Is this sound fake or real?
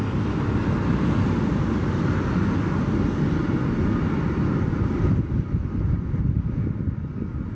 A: real